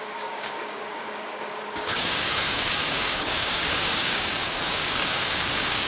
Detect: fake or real fake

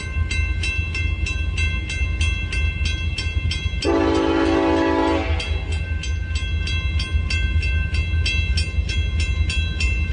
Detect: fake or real real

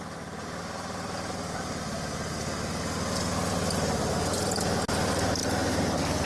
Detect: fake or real real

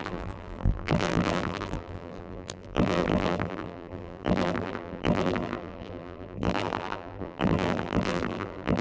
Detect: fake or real fake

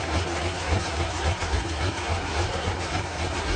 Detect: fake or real fake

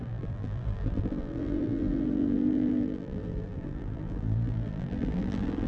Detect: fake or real fake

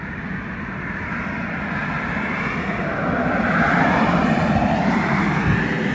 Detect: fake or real real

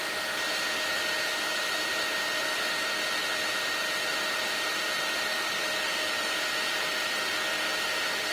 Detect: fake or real real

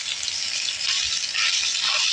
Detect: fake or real real